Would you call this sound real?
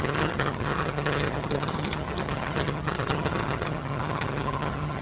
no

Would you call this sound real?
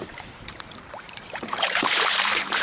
no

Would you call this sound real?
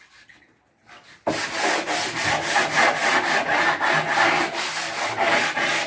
yes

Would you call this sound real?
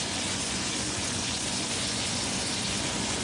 no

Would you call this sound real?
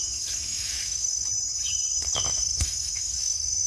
no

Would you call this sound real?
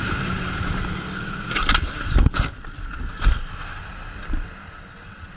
yes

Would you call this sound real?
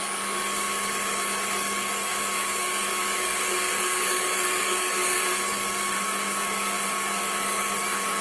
no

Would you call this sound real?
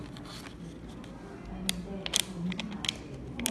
yes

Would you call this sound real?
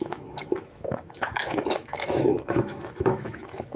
no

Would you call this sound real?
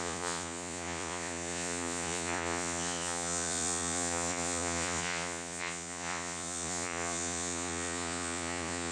no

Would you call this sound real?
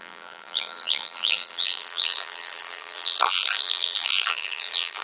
no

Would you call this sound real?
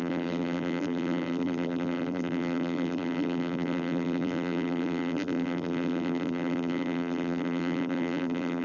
no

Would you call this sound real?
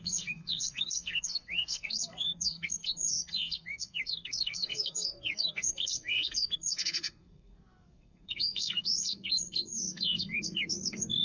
no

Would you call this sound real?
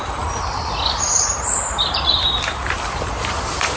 no